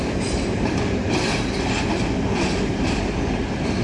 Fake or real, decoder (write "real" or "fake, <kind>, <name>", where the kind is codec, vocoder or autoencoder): real